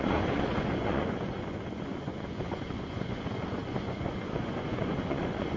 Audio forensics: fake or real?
fake